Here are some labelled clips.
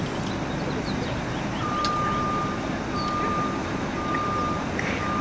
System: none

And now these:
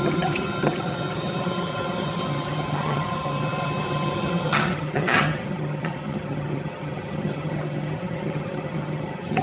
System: vocoder, HiFi-GAN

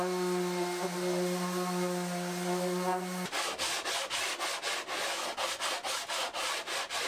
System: none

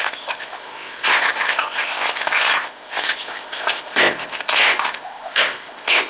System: codec, ZipCodec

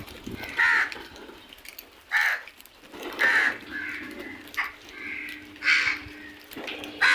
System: vocoder, BigVGAN v2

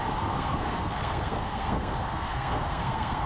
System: codec, SNAC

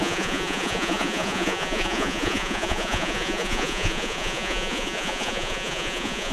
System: vocoder, Vocos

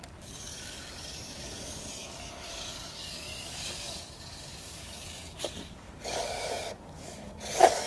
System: codec, DAC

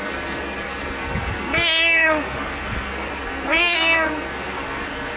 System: codec, SNAC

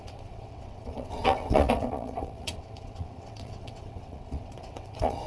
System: vocoder, WaveNeXt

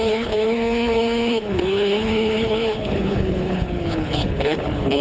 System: codec, HILCodec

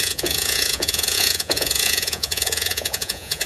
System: vocoder, Vocos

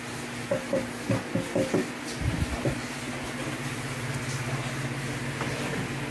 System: none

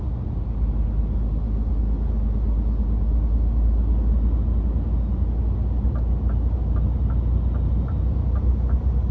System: none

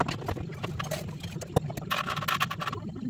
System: none